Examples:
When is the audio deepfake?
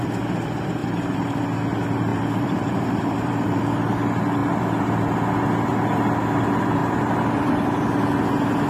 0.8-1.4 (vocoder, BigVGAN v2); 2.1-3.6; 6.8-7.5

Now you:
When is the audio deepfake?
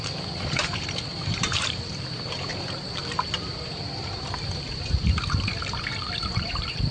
0.0-2.5 (vocoder, BigVGAN v2); 3.1-6.9